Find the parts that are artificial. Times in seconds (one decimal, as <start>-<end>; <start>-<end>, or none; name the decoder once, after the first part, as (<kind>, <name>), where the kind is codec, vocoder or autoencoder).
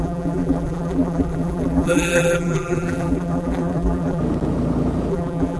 0.0-4.2 (vocoder, BigVGAN v2); 5.1-5.6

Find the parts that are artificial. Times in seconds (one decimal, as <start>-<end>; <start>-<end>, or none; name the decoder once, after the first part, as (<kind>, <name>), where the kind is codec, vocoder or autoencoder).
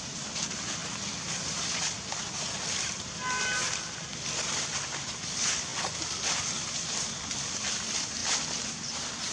0.0-0.8 (vocoder, BigVGAN v2); 1.5-5.7; 7.7-8.2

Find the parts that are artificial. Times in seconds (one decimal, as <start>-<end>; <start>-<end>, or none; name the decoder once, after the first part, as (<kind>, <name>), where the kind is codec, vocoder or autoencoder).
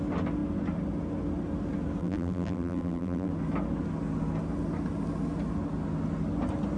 2.0-3.3 (vocoder, BigVGAN v2)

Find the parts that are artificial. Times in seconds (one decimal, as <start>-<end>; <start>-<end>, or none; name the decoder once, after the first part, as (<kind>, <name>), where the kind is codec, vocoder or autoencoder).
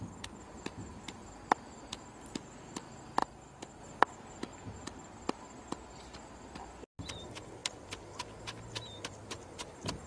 3.2-3.8 (vocoder, BigVGAN v2)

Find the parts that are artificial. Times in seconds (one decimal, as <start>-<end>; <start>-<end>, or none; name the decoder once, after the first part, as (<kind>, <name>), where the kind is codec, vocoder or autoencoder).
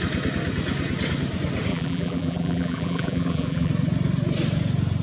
1.7-3.7 (vocoder, BigVGAN v2)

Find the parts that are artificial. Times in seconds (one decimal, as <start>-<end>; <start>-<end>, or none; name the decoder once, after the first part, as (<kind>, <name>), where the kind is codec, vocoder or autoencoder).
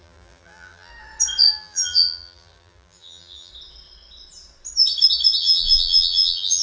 0.0-0.9 (vocoder, BigVGAN v2); 1.5-3.5; 5.4-6.6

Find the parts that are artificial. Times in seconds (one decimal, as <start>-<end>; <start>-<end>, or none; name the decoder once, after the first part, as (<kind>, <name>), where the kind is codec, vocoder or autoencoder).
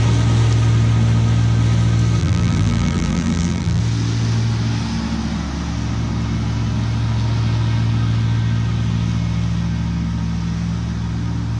2.2-3.8 (vocoder, BigVGAN v2)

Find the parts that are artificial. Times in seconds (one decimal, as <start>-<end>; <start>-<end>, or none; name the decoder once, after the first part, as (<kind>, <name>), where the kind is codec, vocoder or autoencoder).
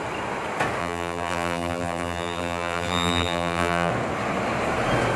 0.8-3.9 (vocoder, BigVGAN v2)